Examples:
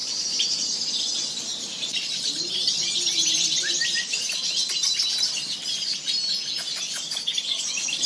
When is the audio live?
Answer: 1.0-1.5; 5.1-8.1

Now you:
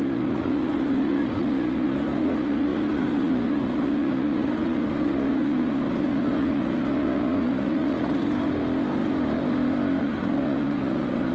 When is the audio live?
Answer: 8.2-10.0

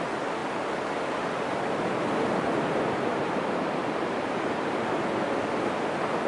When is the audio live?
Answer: 0.0-1.5; 5.3-6.3

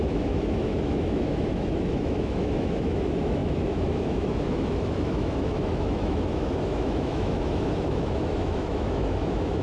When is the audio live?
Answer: none

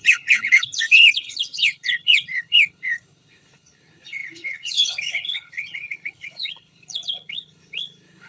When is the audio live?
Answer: none

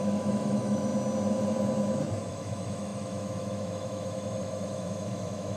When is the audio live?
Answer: 0.9-2.3

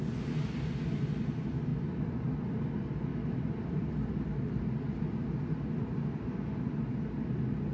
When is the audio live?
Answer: 0.0-1.7; 2.7-3.1; 3.9-7.7